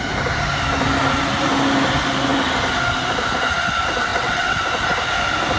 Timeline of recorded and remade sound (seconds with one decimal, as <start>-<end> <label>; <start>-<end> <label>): 0.0-4.1 recorded; 4.1-4.6 remade; 4.6-5.6 recorded